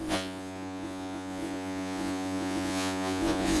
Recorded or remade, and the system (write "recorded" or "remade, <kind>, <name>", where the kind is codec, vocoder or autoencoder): remade, vocoder, Vocos